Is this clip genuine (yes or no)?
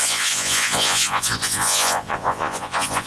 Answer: no